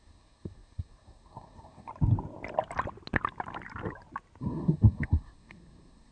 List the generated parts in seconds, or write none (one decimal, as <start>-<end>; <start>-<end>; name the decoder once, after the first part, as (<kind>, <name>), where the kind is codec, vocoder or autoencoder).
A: 0.0-1.9 (codec, SNAC); 4.4-6.1